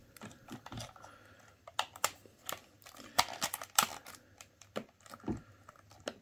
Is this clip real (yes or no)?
yes